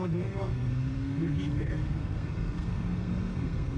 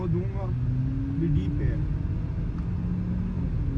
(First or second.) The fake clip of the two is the first